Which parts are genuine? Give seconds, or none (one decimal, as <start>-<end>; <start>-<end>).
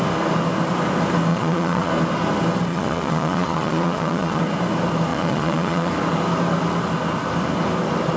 0.0-1.3; 1.9-2.7; 4.4-5.1; 5.9-8.2